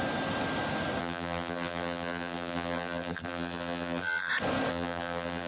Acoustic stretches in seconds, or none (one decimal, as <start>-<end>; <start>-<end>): 0.0-1.0; 4.3-4.7